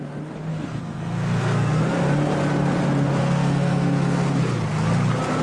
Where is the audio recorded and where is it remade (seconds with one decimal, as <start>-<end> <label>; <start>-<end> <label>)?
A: 0.0-0.5 recorded; 0.5-1.8 remade; 1.8-3.2 recorded; 3.2-4.3 remade; 4.3-5.4 recorded